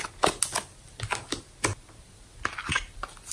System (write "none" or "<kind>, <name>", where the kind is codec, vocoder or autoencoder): none